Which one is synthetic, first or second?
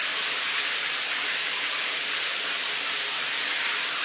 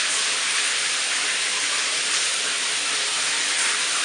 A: first